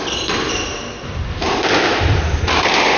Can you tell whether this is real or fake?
real